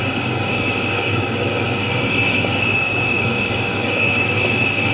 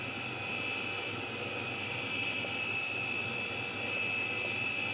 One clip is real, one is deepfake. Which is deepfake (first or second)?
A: first